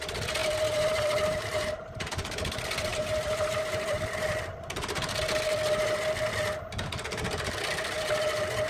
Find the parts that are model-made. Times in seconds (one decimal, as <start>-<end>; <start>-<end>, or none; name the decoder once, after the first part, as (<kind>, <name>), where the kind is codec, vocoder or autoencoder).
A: 0.4-2.1 (vocoder, BigVGAN v2); 2.9-4.0